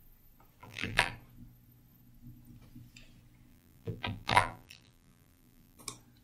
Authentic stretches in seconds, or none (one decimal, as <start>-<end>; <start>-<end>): 0.0-0.6; 1.1-3.5; 5.8-6.2